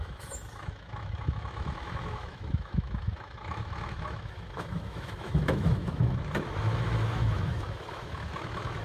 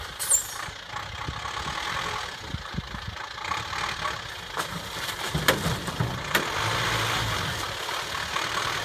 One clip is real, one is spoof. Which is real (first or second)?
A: second